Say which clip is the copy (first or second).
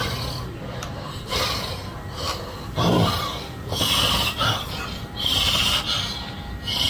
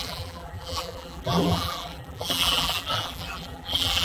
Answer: second